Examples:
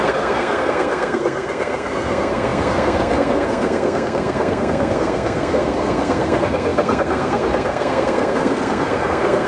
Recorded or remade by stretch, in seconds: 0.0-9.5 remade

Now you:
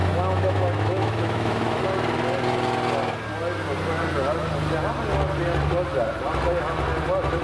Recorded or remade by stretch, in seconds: 0.0-1.8 remade; 1.8-7.4 recorded